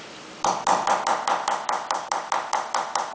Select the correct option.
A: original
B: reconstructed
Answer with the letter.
A